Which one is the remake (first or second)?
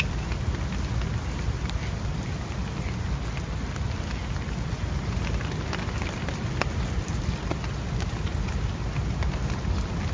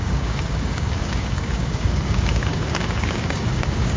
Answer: second